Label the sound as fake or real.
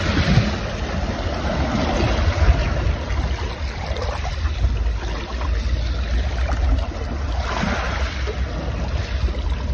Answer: real